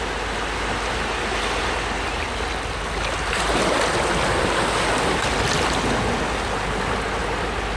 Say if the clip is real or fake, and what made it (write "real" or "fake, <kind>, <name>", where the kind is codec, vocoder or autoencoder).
real